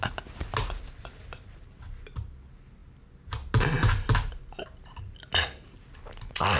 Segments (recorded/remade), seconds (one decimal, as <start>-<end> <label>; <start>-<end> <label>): 0.0-6.6 recorded